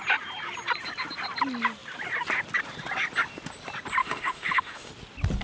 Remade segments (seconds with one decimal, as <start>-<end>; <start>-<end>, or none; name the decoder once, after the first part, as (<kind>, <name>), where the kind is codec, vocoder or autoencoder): 4.0-4.9 (autoencoder, DAC-VAE)